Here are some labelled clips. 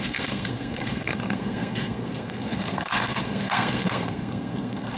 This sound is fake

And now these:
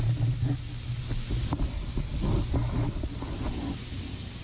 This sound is real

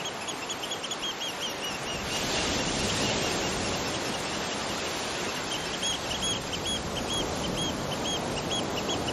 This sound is real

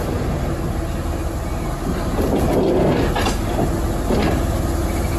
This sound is real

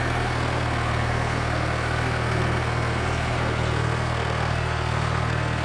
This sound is fake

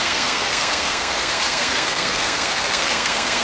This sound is fake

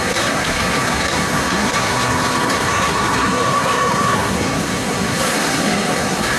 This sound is fake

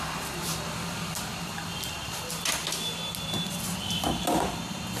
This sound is real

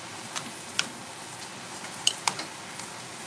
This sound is real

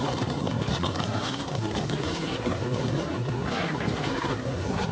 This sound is fake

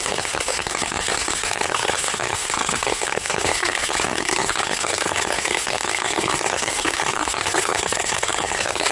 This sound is fake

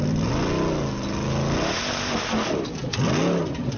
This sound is real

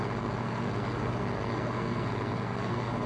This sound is fake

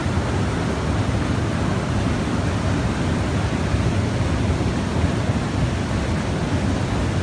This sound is real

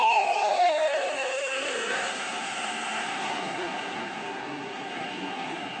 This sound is fake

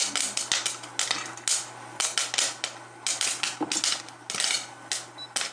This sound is real